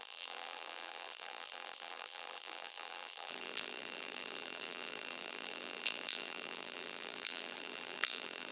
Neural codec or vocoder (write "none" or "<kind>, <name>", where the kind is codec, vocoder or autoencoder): vocoder, BigVGAN v2